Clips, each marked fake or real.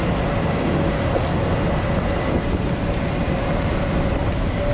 real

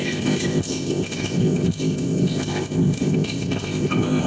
fake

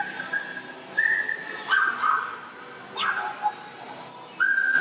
real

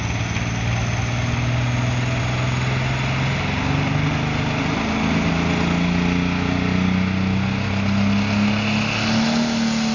real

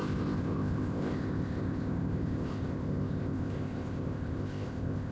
fake